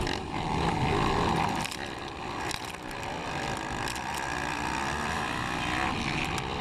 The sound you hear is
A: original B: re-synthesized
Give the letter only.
A